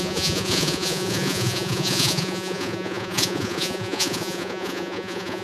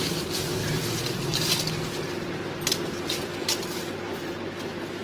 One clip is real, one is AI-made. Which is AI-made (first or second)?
first